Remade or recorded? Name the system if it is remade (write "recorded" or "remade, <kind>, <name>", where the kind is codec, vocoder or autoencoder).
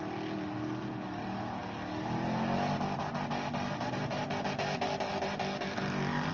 recorded